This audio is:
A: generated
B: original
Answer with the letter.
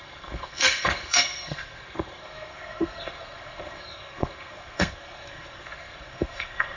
A